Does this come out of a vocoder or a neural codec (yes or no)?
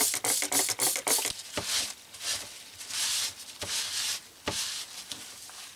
no